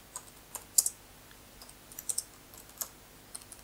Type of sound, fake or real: real